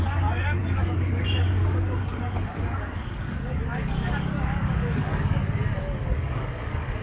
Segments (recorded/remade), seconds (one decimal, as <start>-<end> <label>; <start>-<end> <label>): 0.0-5.4 remade; 5.4-6.1 recorded; 6.1-7.0 remade